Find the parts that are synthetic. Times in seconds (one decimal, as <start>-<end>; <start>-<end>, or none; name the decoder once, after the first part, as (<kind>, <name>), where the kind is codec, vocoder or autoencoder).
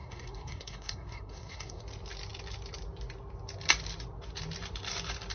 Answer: 0.0-1.8 (codec, SNAC)